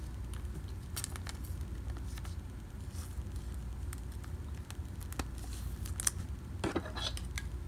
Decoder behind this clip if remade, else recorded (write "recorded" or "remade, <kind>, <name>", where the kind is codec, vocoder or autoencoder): recorded